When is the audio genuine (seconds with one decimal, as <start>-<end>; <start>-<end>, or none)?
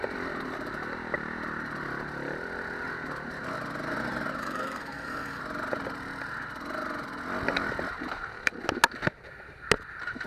0.0-4.4; 5.4-10.3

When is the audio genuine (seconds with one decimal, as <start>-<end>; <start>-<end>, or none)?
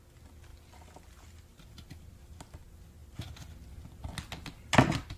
0.0-5.2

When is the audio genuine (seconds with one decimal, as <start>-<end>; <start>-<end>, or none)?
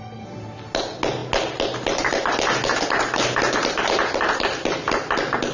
0.0-5.5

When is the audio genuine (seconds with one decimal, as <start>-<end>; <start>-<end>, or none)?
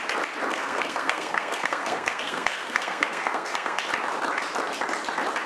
0.0-0.5; 3.8-5.5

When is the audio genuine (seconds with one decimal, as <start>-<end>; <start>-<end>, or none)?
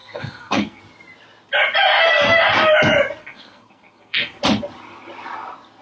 0.8-3.2; 4.4-5.8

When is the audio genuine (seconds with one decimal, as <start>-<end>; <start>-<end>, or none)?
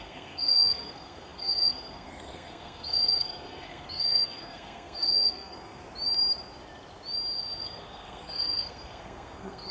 5.8-7.6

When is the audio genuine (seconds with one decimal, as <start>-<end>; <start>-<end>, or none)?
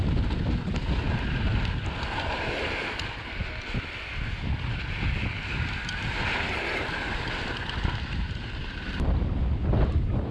0.0-10.3